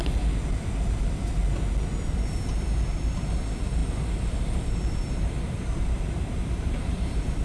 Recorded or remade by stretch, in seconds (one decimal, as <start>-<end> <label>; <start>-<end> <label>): 0.0-1.4 remade; 1.4-2.9 recorded; 2.9-7.4 remade